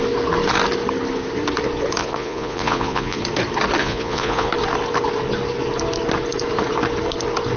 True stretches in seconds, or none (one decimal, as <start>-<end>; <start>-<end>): 0.0-2.0; 3.2-3.8; 4.5-7.6